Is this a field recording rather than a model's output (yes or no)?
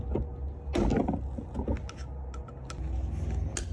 yes